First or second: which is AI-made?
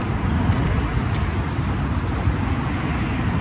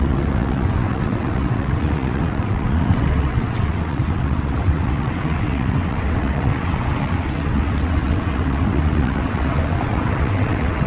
second